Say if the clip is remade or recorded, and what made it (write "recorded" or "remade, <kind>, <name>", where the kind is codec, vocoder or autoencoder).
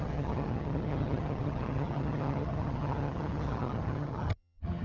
remade, vocoder, HiFi-GAN